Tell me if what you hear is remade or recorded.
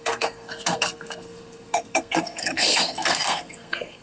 remade